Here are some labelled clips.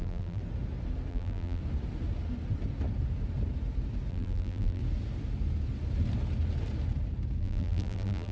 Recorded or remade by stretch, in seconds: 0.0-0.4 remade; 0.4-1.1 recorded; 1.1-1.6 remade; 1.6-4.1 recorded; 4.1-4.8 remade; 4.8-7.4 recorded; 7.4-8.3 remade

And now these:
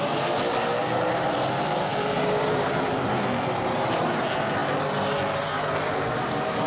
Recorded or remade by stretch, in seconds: 0.0-1.9 recorded; 1.9-3.1 remade; 3.1-6.7 recorded

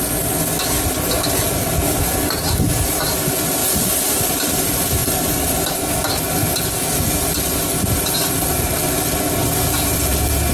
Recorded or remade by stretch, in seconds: 0.0-3.6 recorded; 3.6-4.2 remade; 4.2-10.5 recorded

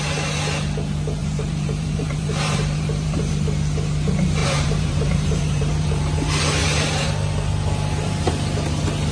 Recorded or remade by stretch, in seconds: 0.0-1.2 recorded; 1.2-3.3 remade; 3.3-4.4 recorded; 4.4-6.0 remade; 6.0-6.6 recorded; 6.6-7.1 remade; 7.1-9.1 recorded

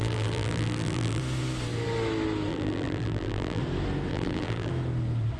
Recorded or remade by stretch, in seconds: 0.0-1.2 remade; 1.2-2.5 recorded; 2.5-3.6 remade; 3.6-4.1 recorded; 4.1-4.7 remade; 4.7-5.4 recorded

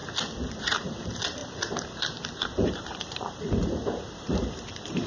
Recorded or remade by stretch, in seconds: 0.0-0.6 recorded; 0.6-1.4 remade; 1.4-2.7 recorded; 2.7-5.1 remade

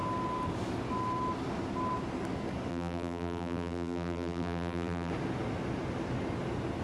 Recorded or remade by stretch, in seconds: 0.0-2.7 recorded; 2.7-5.1 remade; 5.1-6.8 recorded